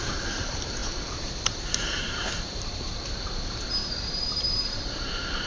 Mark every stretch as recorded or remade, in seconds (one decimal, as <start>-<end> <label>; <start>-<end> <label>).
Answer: 0.0-5.5 remade